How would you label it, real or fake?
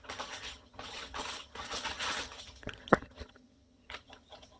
fake